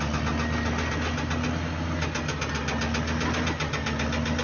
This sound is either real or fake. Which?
real